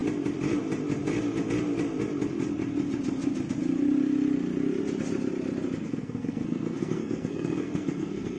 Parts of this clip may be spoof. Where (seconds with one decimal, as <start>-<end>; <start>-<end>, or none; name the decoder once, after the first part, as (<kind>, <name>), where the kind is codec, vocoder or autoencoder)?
5.8-8.4 (codec, SNAC)